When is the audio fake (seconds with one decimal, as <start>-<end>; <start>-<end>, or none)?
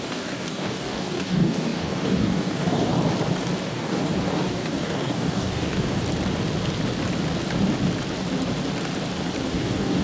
0.0-2.9; 3.6-6.0; 9.5-10.0